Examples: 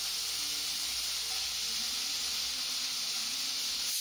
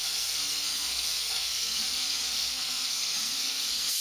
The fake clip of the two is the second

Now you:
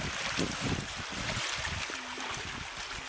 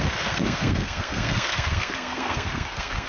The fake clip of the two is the second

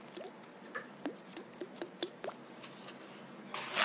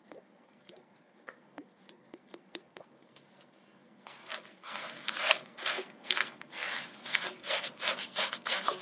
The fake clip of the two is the second